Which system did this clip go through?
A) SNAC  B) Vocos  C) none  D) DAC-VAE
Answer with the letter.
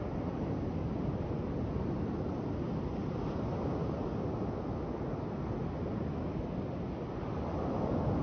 C